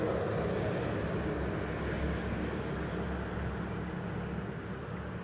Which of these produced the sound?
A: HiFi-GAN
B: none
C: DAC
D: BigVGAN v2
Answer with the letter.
B